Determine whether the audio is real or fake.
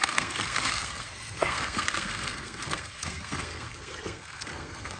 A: fake